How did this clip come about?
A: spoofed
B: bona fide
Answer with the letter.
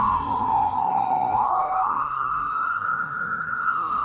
A